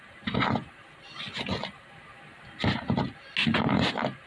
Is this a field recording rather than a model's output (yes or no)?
yes